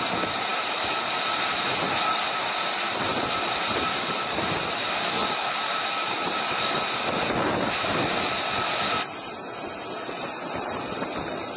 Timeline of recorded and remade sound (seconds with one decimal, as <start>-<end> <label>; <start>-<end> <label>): 0.0-11.6 recorded